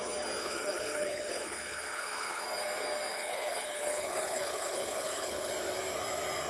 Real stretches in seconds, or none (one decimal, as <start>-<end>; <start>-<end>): 0.0-0.4; 2.4-3.1; 5.5-6.5